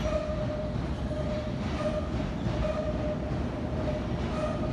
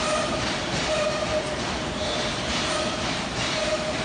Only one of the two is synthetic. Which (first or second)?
second